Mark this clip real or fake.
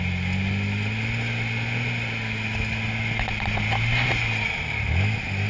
real